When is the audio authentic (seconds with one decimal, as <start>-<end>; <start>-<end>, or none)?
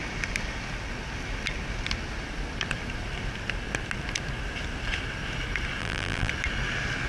0.0-5.8; 6.3-7.1